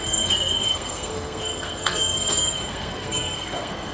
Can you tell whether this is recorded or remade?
remade